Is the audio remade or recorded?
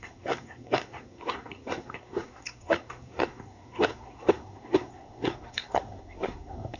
remade